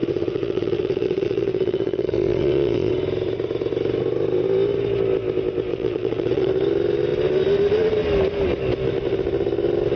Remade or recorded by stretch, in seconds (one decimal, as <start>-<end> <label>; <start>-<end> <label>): 0.0-2.9 remade; 2.9-5.7 recorded; 5.7-6.5 remade; 6.5-10.0 recorded